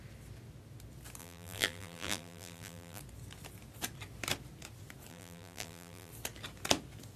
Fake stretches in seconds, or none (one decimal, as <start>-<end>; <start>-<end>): 1.2-3.0; 5.1-6.1